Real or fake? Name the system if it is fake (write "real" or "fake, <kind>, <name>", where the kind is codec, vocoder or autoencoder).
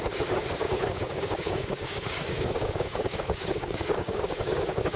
fake, codec, DAC